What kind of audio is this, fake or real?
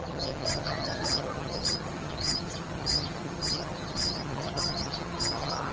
fake